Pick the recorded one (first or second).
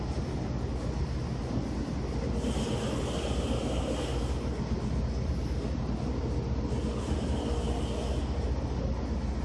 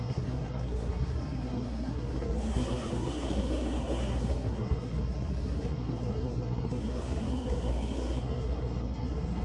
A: first